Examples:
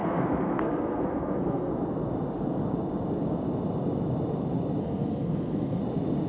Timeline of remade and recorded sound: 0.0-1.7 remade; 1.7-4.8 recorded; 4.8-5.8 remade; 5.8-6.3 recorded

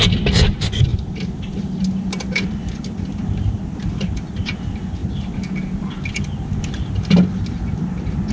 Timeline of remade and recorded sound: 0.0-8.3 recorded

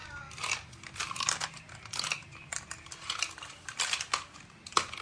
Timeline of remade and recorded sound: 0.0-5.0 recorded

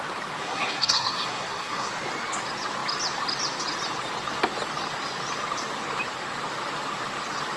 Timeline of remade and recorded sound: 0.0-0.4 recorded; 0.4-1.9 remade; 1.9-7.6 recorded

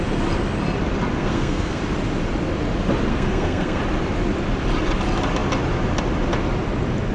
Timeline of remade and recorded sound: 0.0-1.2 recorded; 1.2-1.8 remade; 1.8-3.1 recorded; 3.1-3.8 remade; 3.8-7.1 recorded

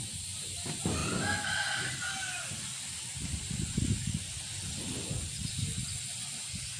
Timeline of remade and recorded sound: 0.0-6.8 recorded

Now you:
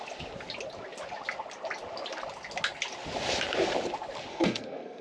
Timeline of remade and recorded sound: 0.0-4.3 recorded; 4.3-5.0 remade